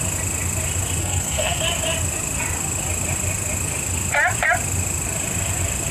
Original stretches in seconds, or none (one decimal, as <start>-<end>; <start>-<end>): 0.0-1.0; 1.6-5.9